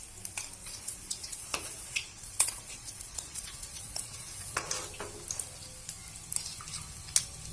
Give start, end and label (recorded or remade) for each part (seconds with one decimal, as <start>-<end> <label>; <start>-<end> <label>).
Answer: 0.0-0.6 recorded; 0.6-4.7 remade; 4.7-7.5 recorded